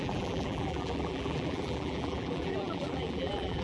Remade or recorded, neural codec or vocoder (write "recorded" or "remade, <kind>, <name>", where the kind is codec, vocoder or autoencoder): remade, vocoder, BigVGAN v2